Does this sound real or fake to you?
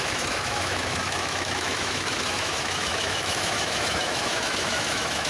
fake